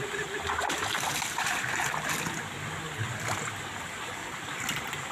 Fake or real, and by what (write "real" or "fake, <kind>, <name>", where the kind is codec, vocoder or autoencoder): real